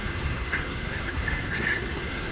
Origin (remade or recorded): remade